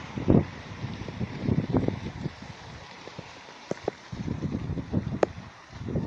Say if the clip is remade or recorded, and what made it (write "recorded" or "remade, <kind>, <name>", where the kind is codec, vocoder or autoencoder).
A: remade, vocoder, BigVGAN v2